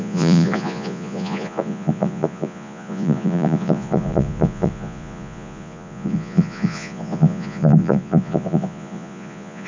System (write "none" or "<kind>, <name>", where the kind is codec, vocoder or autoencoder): vocoder, Vocos